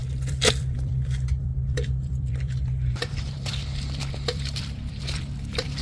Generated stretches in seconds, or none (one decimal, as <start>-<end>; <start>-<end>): 0.0-5.8